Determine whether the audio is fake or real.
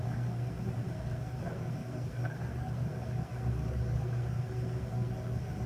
fake